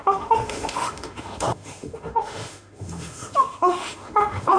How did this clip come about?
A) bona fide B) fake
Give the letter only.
B